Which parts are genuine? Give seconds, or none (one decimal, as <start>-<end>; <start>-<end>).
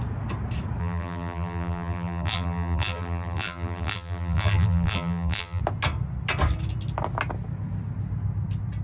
0.0-0.8; 5.6-8.8